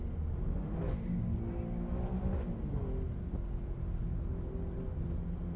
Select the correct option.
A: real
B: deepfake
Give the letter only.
A